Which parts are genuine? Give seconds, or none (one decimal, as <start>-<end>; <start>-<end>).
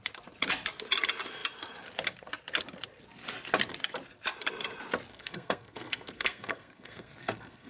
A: 0.0-5.1